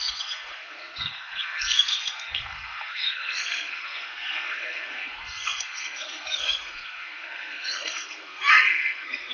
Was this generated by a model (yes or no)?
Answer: yes